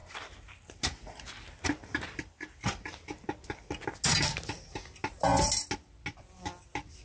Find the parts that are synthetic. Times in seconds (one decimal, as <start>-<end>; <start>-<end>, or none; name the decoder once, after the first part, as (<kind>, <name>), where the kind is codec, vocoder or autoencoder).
none